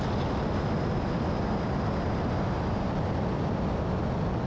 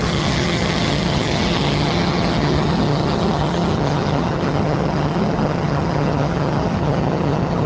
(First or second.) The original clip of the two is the first